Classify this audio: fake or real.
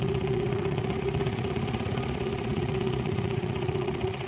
fake